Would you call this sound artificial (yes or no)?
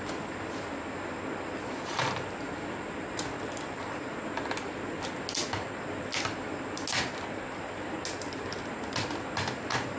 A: no